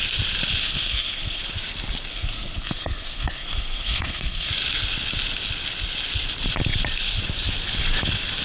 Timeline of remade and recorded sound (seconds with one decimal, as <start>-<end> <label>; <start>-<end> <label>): 0.0-0.6 recorded; 0.6-1.4 remade; 1.4-2.1 recorded; 2.1-4.5 remade; 4.5-8.4 recorded